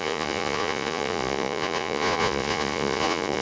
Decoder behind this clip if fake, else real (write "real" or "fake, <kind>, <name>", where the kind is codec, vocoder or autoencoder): fake, vocoder, Vocos